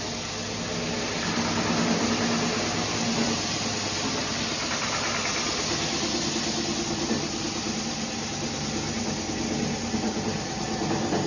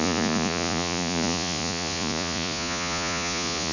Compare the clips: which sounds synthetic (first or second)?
second